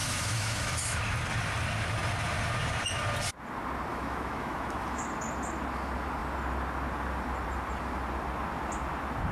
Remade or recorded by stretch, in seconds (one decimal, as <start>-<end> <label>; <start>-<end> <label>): 0.0-1.0 remade; 1.0-3.9 recorded; 3.9-5.0 remade; 5.0-9.3 recorded